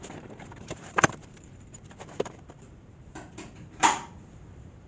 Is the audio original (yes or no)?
no